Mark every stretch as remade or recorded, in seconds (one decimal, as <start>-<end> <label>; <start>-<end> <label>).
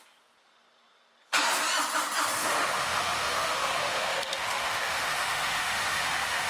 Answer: 0.0-2.4 recorded; 2.4-6.5 remade